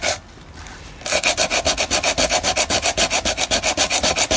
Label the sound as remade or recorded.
recorded